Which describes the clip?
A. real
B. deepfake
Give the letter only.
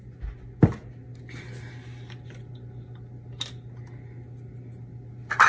A